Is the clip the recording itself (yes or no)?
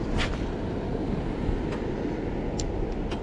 yes